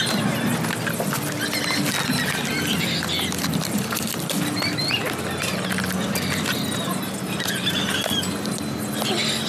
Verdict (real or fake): real